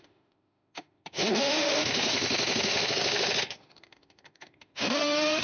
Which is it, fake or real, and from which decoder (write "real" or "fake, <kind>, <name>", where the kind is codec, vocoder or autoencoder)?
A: fake, autoencoder, DAC-VAE